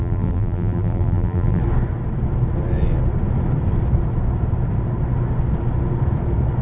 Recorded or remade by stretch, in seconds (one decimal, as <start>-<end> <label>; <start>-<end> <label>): 0.0-1.6 remade; 1.6-6.6 recorded